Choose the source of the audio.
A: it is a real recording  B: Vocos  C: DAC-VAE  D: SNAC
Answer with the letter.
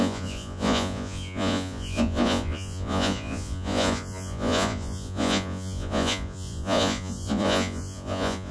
B